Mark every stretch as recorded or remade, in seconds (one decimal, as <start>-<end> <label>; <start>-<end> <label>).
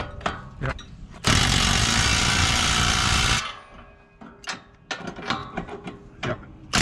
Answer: 0.0-6.8 recorded